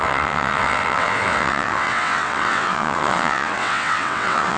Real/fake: fake